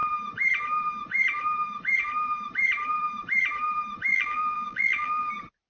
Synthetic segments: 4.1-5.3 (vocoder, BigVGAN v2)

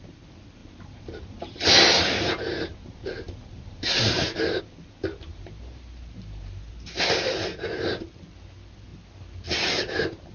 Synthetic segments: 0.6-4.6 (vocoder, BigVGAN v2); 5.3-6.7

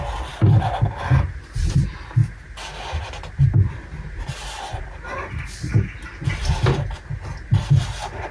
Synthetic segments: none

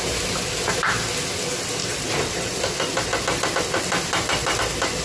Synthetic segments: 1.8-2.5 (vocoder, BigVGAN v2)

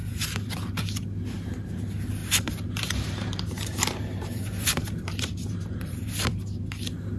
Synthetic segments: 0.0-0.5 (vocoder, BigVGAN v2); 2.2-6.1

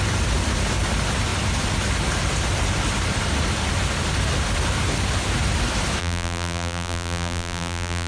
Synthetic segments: 6.0-8.1 (vocoder, BigVGAN v2)